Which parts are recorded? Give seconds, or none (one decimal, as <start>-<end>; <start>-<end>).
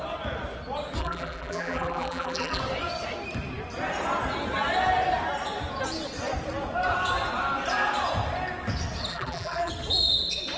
0.0-1.0; 2.6-9.1; 9.7-10.6